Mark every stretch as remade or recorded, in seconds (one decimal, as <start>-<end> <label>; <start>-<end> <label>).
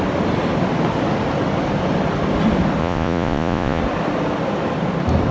0.0-2.8 recorded; 2.8-3.8 remade; 3.8-5.3 recorded